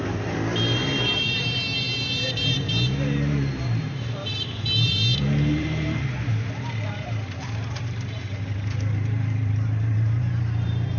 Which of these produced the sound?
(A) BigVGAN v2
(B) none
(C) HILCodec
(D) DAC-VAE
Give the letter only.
A